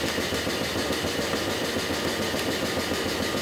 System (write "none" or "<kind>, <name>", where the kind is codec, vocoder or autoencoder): none